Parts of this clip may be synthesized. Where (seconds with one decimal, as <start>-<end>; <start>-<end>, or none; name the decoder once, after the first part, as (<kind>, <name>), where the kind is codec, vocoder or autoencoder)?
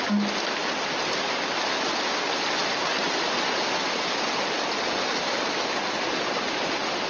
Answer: none